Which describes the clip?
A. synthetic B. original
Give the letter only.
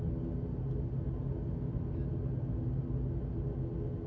B